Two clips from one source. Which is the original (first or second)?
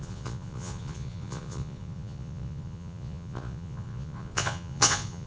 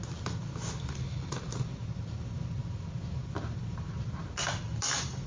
second